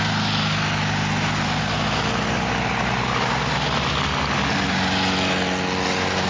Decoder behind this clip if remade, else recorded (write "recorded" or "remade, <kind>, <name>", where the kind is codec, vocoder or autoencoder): recorded